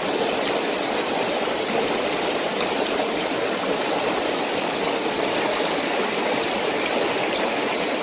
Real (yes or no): yes